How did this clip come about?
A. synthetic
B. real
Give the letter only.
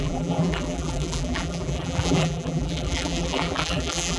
A